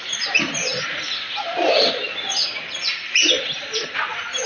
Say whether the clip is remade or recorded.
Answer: recorded